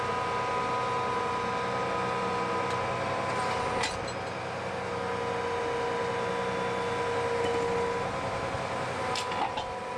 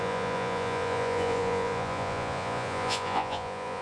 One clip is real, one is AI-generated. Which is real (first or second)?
first